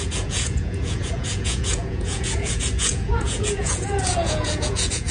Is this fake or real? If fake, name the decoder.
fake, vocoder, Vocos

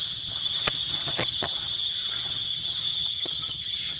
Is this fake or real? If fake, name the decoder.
fake, vocoder, HiFi-GAN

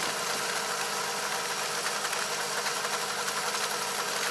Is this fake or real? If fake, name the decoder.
real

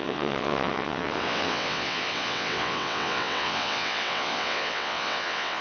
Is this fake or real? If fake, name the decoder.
fake, vocoder, WaveNeXt